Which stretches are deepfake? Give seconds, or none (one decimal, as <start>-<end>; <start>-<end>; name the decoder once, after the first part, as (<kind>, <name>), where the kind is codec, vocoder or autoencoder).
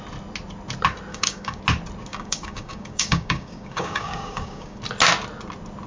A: 1.1-1.6 (codec, DAC); 2.1-4.8